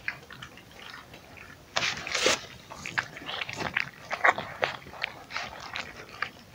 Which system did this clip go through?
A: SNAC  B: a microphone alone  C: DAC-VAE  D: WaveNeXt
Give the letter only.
B